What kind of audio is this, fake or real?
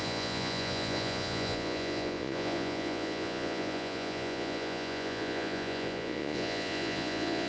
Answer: fake